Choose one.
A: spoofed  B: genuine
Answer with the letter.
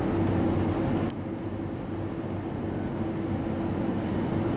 B